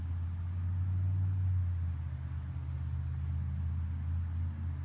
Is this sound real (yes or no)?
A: yes